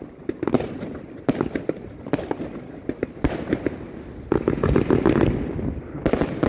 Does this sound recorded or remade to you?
remade